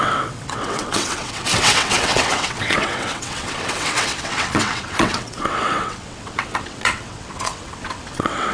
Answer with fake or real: fake